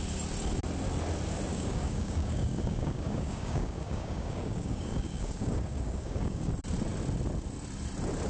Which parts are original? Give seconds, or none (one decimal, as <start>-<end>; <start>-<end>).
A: 0.0-1.5; 6.5-8.3